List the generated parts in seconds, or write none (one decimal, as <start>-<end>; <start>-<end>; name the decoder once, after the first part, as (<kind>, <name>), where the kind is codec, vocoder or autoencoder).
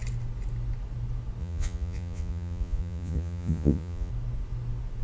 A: 1.4-4.1 (vocoder, Vocos)